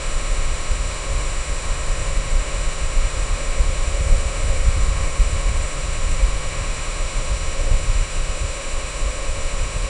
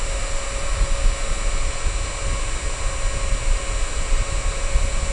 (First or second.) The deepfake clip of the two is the first